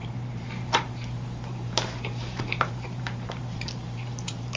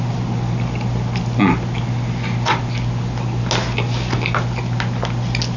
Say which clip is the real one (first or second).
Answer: second